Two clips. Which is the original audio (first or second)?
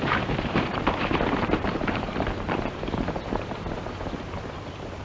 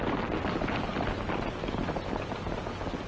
second